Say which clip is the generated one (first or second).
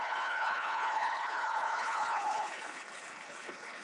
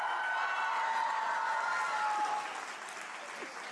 first